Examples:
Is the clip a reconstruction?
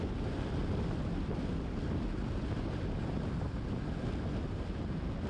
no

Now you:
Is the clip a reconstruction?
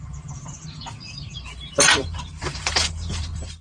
yes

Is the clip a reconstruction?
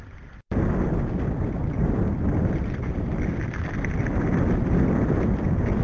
no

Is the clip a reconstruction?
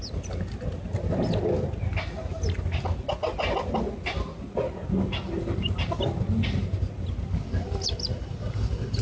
no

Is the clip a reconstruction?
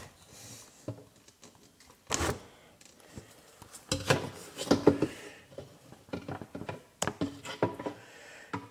no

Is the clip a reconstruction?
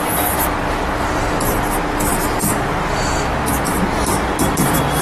no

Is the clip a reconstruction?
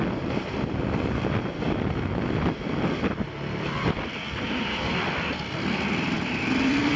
yes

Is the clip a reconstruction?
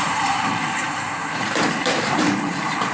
yes